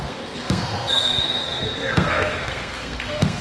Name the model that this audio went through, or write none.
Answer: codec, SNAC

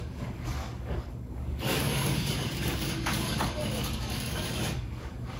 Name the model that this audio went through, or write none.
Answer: codec, DAC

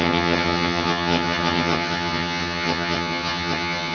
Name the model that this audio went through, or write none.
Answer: vocoder, HiFi-GAN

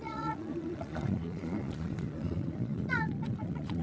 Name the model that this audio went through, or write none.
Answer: vocoder, Vocos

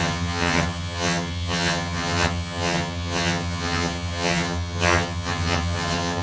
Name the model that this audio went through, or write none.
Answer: vocoder, HiFi-GAN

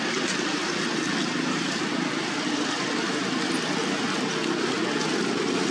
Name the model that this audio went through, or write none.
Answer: none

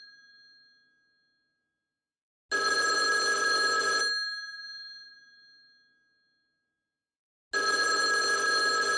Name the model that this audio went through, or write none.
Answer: none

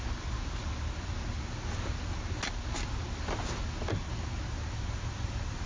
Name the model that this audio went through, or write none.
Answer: none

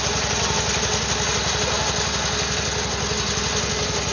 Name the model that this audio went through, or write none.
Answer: none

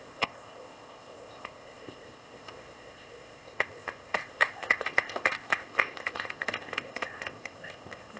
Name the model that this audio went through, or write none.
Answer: codec, ZipCodec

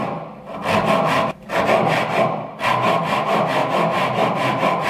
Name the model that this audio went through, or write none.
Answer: none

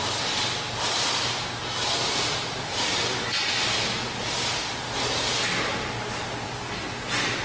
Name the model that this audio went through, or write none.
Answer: none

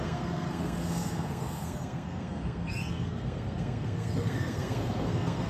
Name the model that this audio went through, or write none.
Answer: codec, SNAC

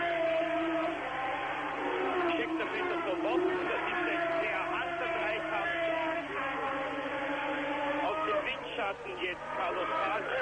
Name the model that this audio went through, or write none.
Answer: vocoder, BigVGAN v2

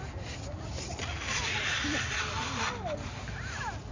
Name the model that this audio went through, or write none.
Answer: none